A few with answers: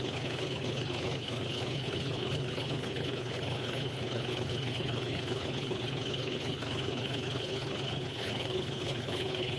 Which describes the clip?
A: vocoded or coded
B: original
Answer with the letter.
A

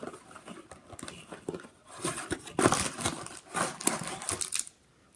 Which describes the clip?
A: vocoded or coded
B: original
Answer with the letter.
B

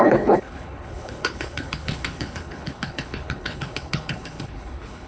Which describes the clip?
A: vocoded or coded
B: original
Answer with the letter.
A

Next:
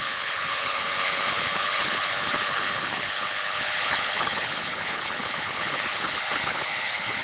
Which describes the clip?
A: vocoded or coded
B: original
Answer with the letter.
A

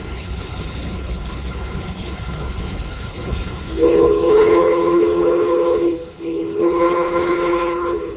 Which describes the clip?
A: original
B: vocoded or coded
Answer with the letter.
B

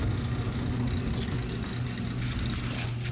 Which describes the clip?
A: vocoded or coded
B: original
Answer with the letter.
B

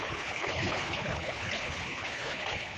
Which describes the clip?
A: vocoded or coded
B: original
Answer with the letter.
A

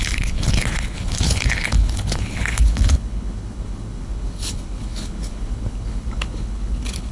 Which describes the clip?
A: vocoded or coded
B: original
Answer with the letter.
A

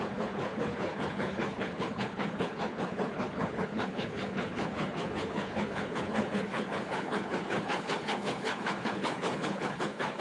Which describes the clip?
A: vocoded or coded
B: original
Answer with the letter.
A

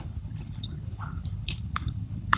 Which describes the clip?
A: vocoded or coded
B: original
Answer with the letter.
A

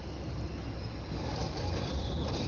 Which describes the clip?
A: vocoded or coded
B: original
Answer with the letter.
B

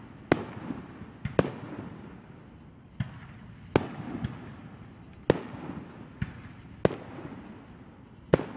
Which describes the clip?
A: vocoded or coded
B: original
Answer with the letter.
B